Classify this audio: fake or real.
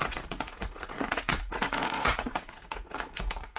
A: fake